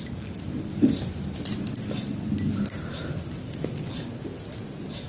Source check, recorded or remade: recorded